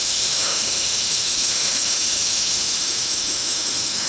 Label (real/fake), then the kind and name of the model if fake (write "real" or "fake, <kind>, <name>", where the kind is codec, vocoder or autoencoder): fake, autoencoder, DAC-VAE